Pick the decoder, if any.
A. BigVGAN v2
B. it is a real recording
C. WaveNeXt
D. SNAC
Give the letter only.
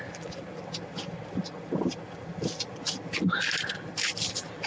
B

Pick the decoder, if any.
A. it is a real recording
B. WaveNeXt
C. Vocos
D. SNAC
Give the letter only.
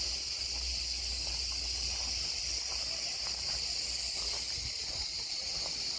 A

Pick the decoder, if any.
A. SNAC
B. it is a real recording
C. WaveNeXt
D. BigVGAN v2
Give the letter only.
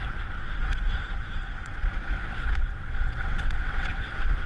C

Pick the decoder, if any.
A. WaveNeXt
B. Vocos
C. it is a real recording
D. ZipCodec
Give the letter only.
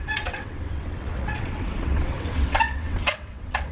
A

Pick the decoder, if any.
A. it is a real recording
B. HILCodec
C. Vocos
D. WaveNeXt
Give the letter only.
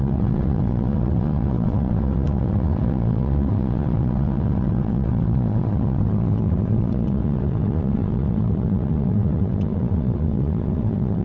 D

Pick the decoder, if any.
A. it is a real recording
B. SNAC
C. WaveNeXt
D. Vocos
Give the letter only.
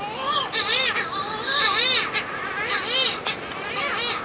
A